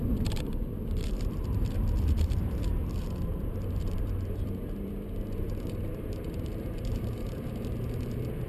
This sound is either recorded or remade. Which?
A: remade